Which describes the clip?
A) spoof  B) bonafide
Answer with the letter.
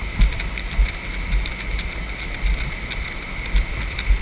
B